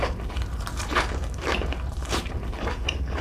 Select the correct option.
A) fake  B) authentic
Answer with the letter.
A